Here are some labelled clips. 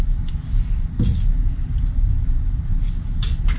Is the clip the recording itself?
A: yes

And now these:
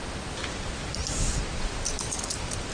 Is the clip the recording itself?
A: yes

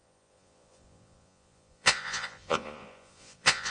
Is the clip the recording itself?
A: no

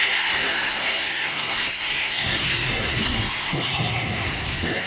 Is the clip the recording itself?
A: no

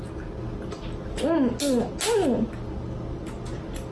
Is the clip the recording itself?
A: yes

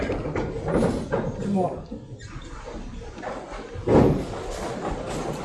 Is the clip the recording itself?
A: yes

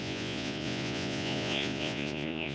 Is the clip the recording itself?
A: no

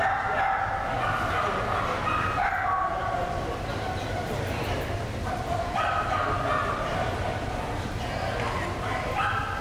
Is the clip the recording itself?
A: yes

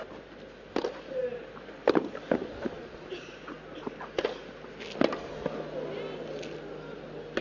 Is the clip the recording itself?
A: yes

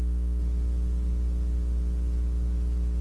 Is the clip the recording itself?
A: yes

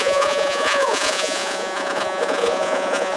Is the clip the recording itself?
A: no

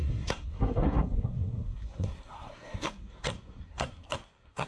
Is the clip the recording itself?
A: no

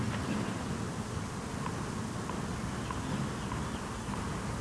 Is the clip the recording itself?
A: yes